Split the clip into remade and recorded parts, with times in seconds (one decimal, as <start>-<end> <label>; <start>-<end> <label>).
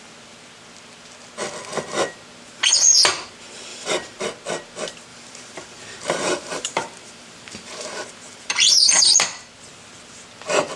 0.0-3.7 recorded; 3.7-4.2 remade; 4.2-5.1 recorded; 5.1-9.0 remade; 9.0-10.8 recorded